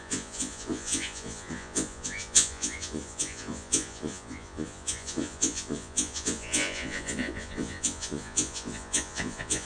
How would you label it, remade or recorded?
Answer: remade